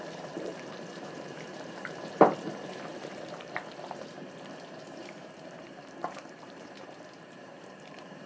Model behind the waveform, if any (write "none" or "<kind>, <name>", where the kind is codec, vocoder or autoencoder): vocoder, BigVGAN v2